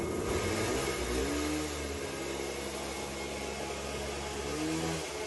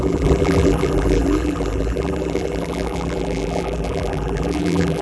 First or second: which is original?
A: first